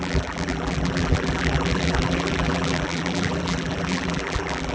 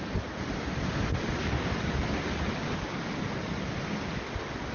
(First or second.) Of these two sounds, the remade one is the first